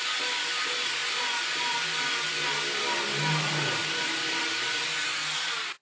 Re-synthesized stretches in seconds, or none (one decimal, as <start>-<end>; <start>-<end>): none